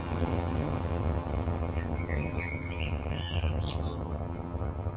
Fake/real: fake